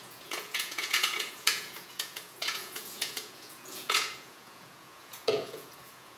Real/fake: fake